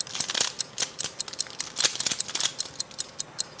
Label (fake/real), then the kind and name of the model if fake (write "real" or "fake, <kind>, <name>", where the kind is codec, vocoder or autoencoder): real